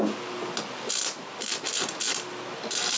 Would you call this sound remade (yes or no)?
no